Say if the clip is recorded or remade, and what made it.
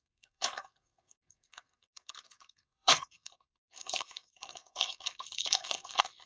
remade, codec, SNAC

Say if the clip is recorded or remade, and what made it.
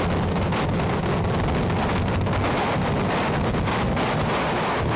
recorded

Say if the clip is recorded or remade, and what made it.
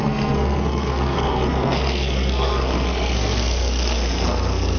remade, codec, SNAC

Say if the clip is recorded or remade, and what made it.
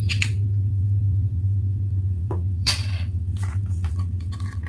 remade, vocoder, WaveNeXt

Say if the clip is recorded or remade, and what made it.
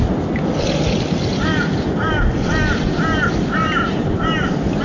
recorded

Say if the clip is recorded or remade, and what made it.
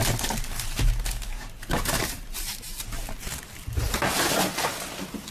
recorded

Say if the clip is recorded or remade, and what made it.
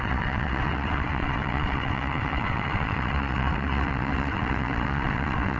remade, vocoder, WaveNeXt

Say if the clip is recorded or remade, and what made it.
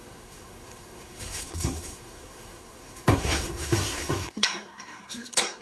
remade, codec, SNAC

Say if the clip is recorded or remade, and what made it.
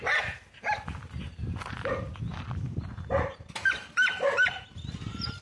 recorded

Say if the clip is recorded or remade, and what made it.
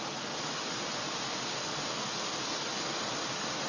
recorded